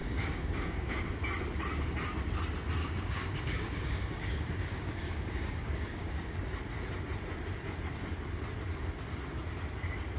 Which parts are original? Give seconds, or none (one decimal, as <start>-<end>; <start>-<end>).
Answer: 1.1-2.8; 6.1-10.2